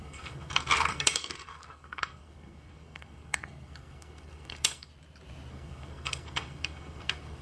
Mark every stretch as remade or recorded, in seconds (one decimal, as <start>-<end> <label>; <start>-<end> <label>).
0.0-4.9 remade; 4.9-5.5 recorded; 5.5-7.4 remade